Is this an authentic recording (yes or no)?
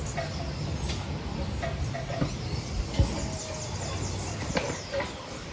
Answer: yes